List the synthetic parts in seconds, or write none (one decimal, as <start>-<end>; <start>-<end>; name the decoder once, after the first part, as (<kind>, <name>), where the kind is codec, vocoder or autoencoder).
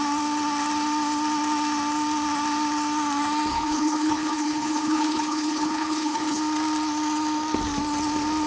3.5-6.4 (codec, HILCodec)